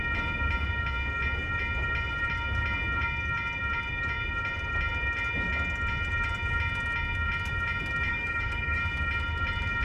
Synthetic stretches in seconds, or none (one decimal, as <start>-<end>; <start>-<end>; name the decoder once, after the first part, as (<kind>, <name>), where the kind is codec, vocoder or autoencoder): 8.1-8.8 (autoencoder, DAC-VAE)